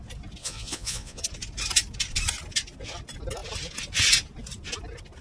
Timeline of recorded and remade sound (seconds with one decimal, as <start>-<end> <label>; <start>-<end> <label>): 0.0-0.4 recorded; 0.4-1.2 remade; 1.2-5.2 recorded